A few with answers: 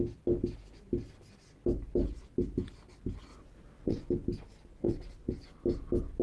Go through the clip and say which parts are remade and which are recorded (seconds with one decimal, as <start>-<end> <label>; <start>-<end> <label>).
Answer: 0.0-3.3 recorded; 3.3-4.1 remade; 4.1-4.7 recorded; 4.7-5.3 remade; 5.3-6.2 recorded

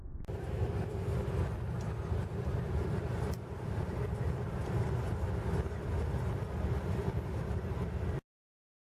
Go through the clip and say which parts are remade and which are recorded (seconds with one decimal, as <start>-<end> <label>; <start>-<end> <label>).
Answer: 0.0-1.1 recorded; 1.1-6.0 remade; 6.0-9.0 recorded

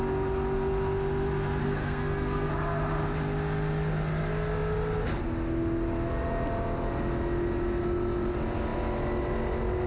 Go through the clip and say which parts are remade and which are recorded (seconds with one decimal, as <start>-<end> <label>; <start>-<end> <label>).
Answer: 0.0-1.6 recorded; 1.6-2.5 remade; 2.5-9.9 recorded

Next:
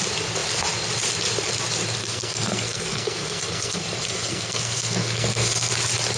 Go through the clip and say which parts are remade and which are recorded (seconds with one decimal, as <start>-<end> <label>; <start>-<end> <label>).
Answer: 0.0-2.0 recorded; 2.0-5.7 remade; 5.7-6.2 recorded